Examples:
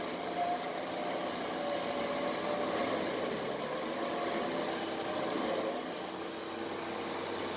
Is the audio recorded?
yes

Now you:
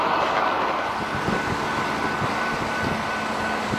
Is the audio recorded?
yes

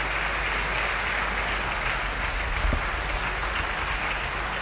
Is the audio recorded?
yes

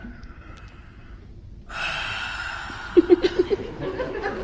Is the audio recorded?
yes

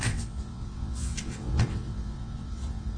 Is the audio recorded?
no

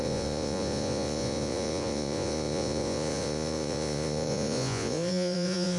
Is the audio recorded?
no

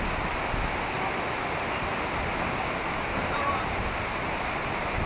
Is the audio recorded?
yes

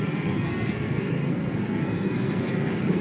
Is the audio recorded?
no